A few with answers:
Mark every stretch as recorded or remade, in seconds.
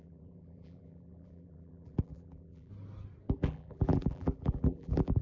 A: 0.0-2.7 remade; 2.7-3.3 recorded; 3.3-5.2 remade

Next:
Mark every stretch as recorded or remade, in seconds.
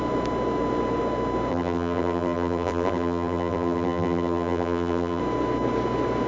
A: 0.0-1.5 recorded; 1.5-5.2 remade; 5.2-6.3 recorded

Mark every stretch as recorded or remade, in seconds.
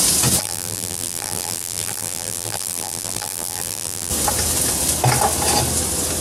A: 0.0-0.4 recorded; 0.4-4.1 remade; 4.1-6.2 recorded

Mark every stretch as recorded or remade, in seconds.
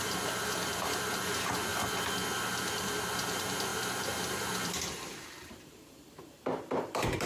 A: 0.0-1.7 remade; 1.7-2.5 recorded; 2.5-7.3 remade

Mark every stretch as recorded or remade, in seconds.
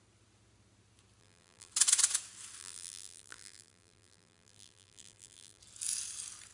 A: 0.0-1.2 recorded; 1.2-1.7 remade; 1.7-2.6 recorded; 2.6-5.6 remade; 5.6-6.5 recorded